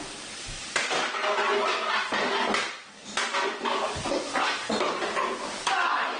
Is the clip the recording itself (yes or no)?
yes